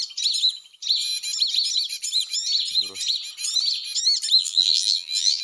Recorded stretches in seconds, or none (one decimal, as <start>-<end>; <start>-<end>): 0.0-4.4